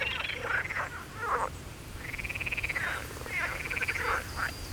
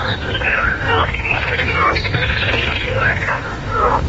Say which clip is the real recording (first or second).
first